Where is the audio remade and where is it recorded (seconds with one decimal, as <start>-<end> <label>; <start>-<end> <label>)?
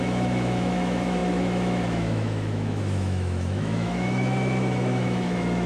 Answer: 0.0-5.7 remade